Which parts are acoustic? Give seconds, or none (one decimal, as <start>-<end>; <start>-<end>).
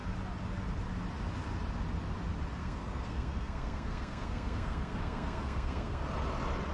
0.0-2.6; 6.0-6.7